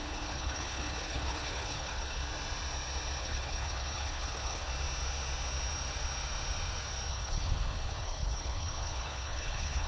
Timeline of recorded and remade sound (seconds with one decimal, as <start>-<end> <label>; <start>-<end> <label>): 0.0-2.2 remade; 2.2-3.2 recorded; 3.2-4.7 remade; 4.7-7.1 recorded; 7.1-9.9 remade

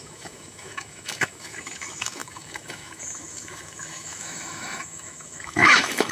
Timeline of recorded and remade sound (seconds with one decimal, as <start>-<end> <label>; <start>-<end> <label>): 0.0-6.1 remade

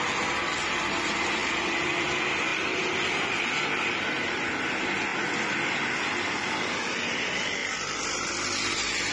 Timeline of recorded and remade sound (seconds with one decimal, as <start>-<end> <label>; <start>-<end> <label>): 0.0-2.5 recorded; 2.5-4.6 remade; 4.6-7.6 recorded; 7.6-9.1 remade

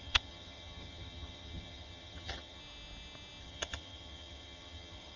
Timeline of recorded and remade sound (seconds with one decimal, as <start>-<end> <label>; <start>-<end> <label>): 0.0-2.6 remade; 2.6-3.4 recorded; 3.4-5.2 remade

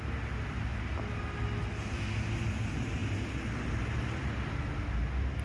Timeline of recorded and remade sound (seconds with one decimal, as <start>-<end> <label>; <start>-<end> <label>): 0.0-5.4 recorded